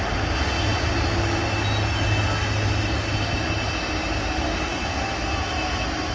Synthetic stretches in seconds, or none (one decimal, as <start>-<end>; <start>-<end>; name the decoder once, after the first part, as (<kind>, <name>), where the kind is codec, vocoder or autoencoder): none